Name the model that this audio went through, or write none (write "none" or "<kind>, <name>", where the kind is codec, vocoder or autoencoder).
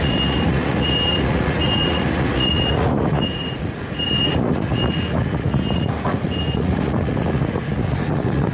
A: vocoder, Vocos